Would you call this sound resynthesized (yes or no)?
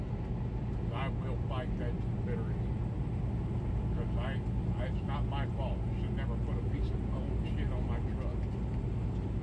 no